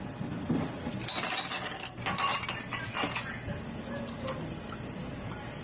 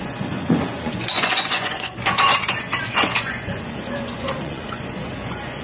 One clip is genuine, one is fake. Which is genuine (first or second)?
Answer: first